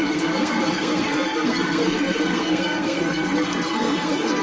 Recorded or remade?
remade